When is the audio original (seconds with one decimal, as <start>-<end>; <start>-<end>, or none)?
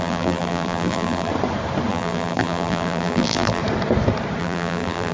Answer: 1.3-1.9; 3.6-4.4